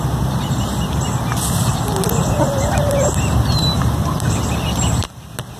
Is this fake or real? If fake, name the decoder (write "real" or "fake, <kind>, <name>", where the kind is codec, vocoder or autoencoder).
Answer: real